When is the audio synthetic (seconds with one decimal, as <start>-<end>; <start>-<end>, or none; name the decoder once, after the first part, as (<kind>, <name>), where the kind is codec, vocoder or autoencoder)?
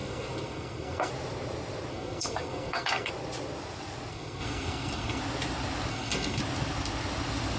0.0-1.1 (codec, SNAC); 1.9-3.1; 4.1-5.2; 5.9-6.4